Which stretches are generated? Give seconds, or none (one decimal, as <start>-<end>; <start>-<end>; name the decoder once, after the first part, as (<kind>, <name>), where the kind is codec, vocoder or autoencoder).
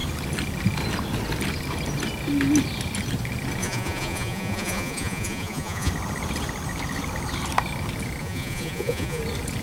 3.6-5.9 (vocoder, Vocos); 8.2-9.2